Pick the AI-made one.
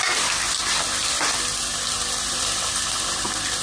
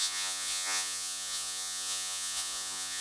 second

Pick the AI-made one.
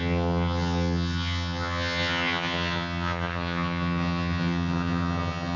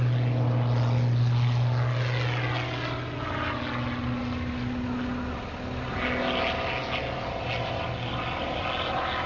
first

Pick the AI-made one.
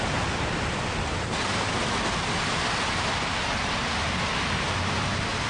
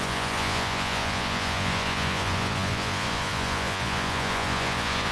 second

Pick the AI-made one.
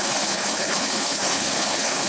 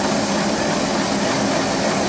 first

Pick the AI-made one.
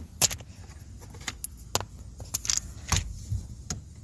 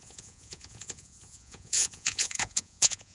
second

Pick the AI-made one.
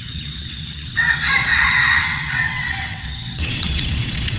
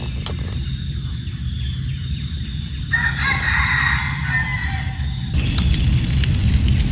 first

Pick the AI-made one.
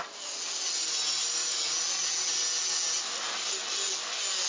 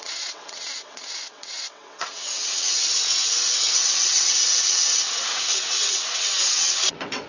second